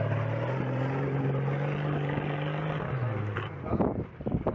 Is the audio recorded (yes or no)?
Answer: yes